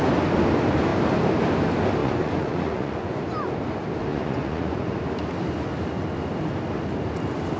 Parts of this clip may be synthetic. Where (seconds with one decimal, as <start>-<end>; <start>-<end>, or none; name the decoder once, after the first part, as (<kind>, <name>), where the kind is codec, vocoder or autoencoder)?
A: 2.0-3.2 (vocoder, Vocos); 4.1-5.0